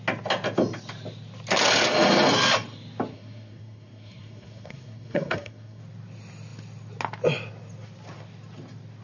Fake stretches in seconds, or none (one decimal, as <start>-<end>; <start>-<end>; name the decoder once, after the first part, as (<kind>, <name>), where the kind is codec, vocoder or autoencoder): 3.1-5.8 (codec, SNAC)